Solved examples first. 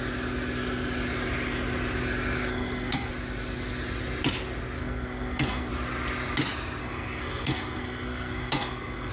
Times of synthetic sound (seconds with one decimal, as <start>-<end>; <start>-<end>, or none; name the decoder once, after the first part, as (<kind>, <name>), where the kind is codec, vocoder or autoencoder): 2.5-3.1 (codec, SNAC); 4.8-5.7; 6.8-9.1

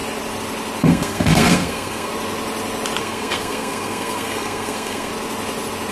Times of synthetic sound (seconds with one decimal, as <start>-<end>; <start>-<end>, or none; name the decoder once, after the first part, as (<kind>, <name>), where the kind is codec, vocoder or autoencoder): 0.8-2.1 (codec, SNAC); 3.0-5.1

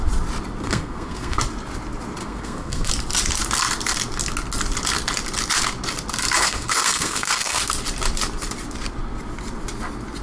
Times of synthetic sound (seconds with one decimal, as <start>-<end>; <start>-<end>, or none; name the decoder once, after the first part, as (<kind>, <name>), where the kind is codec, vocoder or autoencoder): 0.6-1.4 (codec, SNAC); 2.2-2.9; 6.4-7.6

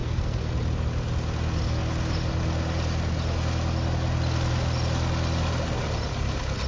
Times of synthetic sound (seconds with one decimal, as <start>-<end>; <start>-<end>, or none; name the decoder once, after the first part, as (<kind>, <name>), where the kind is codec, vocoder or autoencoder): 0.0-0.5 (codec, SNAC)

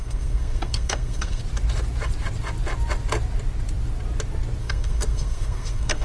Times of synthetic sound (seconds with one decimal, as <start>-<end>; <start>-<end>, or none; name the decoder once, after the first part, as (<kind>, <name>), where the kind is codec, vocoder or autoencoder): 0.0-1.4 (codec, SNAC); 4.6-6.0

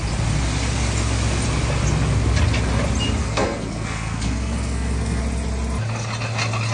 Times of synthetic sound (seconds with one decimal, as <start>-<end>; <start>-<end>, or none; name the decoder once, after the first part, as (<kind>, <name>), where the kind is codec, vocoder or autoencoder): 3.2-5.2 (codec, SNAC)

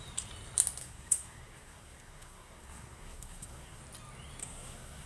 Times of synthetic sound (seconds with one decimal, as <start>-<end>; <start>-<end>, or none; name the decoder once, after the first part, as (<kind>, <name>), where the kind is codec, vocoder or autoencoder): 0.8-3.8 (codec, SNAC); 4.4-5.1

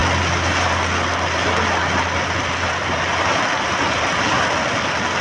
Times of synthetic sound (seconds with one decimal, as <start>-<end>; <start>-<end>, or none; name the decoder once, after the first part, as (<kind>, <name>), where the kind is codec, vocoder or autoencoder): none